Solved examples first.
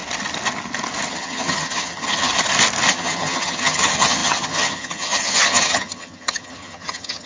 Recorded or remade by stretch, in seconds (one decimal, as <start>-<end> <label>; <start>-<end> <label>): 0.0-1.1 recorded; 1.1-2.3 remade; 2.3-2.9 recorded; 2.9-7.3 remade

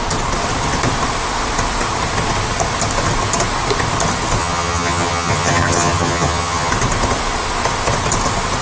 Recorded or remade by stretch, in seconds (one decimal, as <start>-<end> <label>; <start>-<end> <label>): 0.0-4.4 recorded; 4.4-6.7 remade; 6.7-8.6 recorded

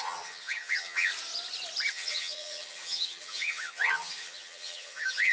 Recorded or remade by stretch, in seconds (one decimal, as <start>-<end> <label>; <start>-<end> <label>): 0.0-1.1 remade; 1.1-1.9 recorded; 1.9-5.3 remade

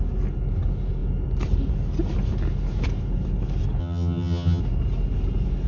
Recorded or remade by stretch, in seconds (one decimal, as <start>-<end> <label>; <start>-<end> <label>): 0.0-3.8 recorded; 3.8-4.6 remade; 4.6-5.7 recorded

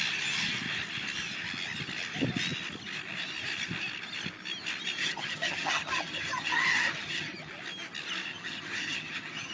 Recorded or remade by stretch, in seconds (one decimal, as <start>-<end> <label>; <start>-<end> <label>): 0.0-5.0 recorded; 5.0-7.5 remade; 7.5-8.3 recorded; 8.3-9.5 remade

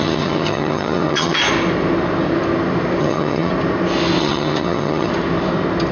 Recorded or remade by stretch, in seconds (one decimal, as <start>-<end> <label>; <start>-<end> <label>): 0.0-1.4 remade; 1.4-3.0 recorded; 3.0-3.5 remade; 3.5-4.2 recorded; 4.2-5.1 remade; 5.1-5.9 recorded